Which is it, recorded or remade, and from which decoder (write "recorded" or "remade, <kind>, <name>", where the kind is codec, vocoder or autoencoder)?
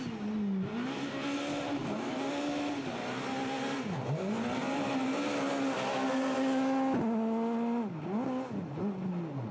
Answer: recorded